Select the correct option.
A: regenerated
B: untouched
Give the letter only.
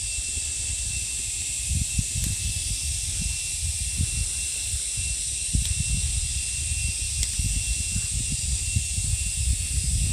B